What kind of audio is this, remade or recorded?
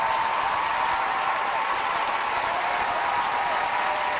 remade